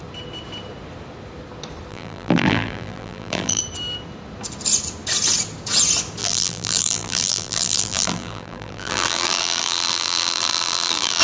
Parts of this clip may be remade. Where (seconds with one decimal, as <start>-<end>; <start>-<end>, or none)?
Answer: 1.9-3.6; 6.2-11.2